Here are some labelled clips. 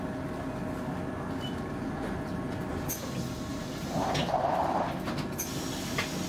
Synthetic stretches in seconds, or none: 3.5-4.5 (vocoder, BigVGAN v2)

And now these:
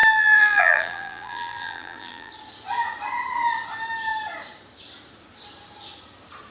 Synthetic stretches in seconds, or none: 0.0-2.3 (vocoder, BigVGAN v2)

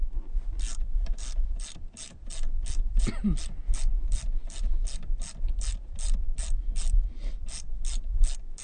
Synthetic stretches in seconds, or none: none